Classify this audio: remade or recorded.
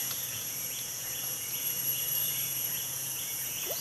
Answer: remade